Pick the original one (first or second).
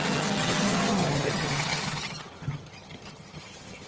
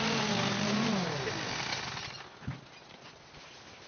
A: second